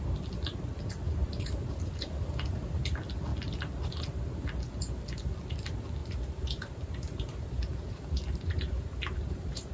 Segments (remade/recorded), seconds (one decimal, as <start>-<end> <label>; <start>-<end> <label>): 0.0-1.2 recorded; 1.2-2.8 remade; 2.8-6.0 recorded; 6.0-9.7 remade